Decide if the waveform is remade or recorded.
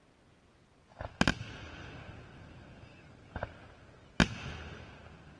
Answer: recorded